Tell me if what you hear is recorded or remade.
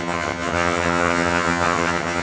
remade